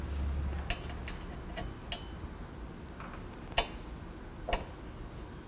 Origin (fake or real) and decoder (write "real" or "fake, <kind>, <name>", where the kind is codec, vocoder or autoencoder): real